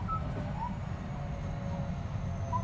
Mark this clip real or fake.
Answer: real